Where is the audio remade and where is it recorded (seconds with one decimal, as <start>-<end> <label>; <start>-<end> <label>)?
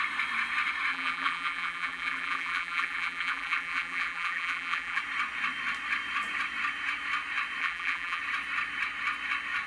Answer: 0.0-0.9 recorded; 0.9-5.0 remade; 5.0-7.6 recorded; 7.6-8.2 remade; 8.2-9.7 recorded